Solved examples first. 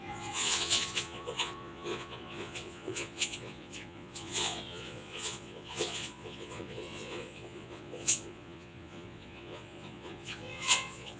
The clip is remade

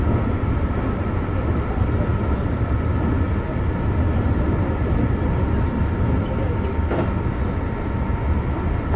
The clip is recorded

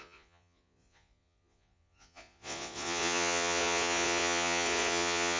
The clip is remade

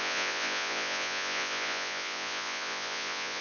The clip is remade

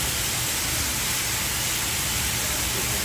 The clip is recorded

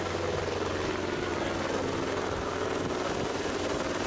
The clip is recorded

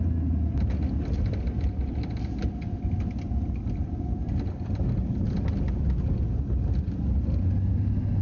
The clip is recorded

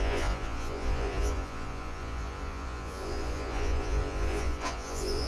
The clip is remade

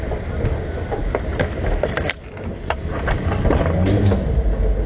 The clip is recorded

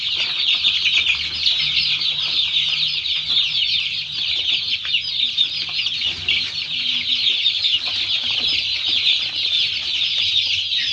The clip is recorded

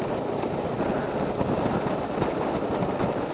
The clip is recorded